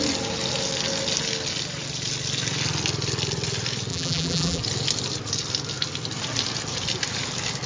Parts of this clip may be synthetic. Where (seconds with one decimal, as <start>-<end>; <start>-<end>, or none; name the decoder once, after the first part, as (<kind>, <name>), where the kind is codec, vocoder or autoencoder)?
3.9-4.6 (vocoder, BigVGAN v2)